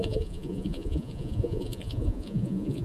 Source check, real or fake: fake